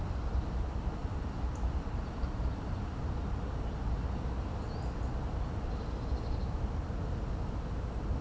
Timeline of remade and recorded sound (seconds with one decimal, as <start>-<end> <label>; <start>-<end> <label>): 0.0-8.2 recorded